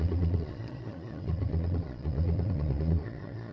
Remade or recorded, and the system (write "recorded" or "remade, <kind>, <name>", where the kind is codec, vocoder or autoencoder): remade, vocoder, Vocos